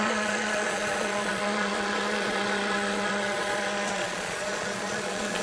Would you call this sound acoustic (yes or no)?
no